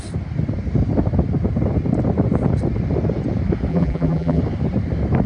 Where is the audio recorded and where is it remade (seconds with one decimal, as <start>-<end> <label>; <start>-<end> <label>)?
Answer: 0.0-3.7 recorded; 3.7-4.4 remade; 4.4-5.3 recorded